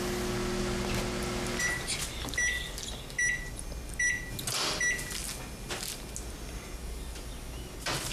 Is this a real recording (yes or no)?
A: yes